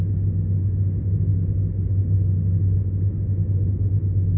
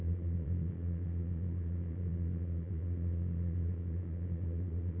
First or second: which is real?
first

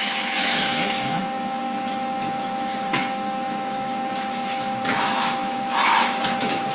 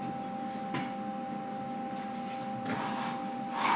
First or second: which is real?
second